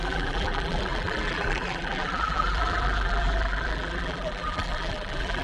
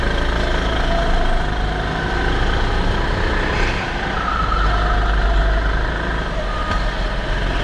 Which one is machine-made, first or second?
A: first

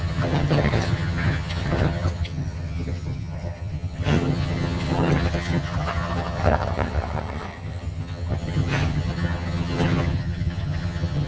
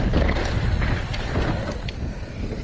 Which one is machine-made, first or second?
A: first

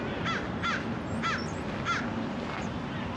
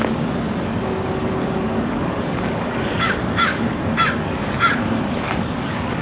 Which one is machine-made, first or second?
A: second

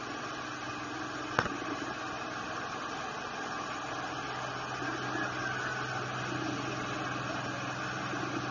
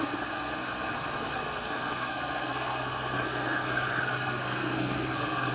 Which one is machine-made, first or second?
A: second